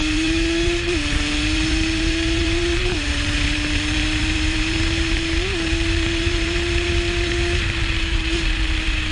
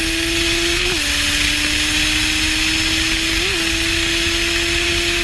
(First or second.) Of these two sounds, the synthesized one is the first